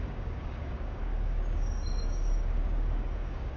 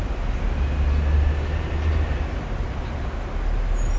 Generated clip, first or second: first